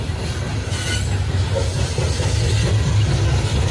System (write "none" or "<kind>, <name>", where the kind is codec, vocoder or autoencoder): none